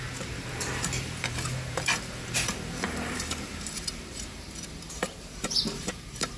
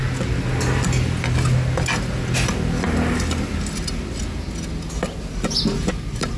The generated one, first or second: first